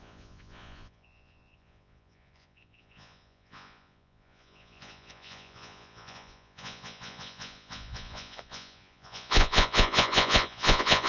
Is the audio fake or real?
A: fake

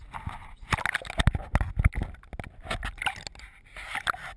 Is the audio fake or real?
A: real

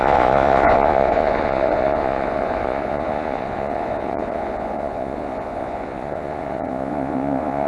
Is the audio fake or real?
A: fake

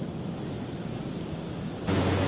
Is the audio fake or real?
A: real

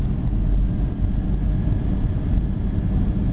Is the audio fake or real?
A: real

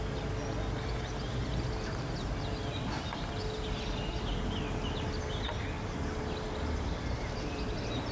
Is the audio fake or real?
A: real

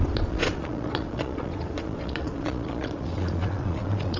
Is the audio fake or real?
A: fake